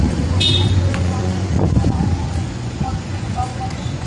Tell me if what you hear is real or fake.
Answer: fake